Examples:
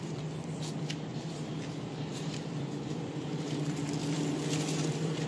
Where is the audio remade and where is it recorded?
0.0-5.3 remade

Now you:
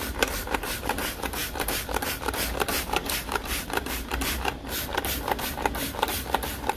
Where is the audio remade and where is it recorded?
0.0-6.8 remade

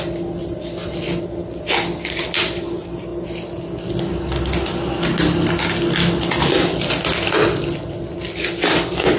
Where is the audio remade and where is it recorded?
0.0-3.1 remade; 3.1-8.1 recorded; 8.1-9.2 remade

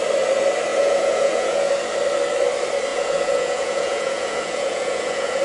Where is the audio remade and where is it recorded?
0.0-0.7 recorded; 0.7-1.7 remade; 1.7-2.9 recorded; 2.9-5.4 remade